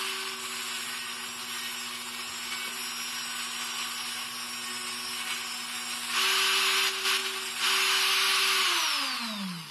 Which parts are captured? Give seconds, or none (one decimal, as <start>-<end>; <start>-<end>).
0.0-9.7

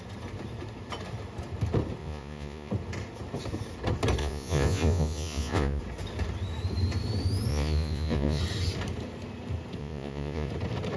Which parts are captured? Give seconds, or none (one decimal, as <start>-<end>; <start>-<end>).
0.0-2.0; 2.7-4.2; 5.8-7.5; 8.4-9.8; 10.5-11.0